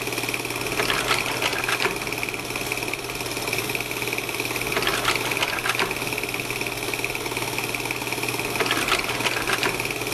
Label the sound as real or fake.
real